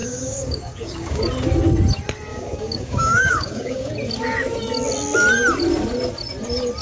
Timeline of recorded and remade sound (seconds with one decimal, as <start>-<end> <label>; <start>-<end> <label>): 0.0-1.2 remade; 1.2-2.3 recorded; 2.3-3.9 remade; 3.9-6.8 recorded